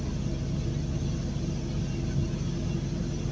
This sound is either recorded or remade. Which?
recorded